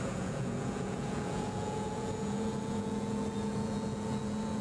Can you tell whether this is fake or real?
fake